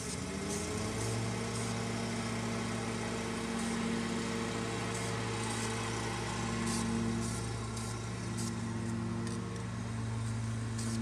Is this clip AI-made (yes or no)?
no